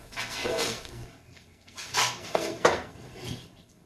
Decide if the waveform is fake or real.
fake